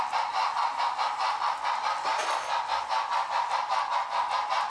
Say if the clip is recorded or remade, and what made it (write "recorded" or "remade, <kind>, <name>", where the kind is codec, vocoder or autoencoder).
recorded